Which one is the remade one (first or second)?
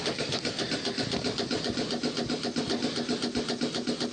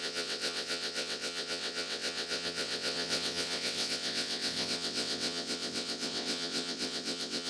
second